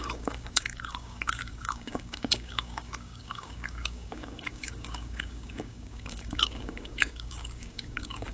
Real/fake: fake